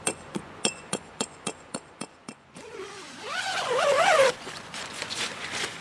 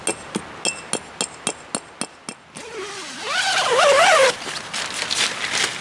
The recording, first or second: second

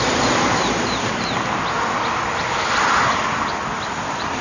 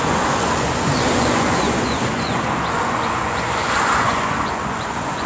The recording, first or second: first